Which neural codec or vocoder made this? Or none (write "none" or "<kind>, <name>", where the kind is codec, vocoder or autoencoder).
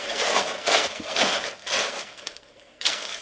codec, SNAC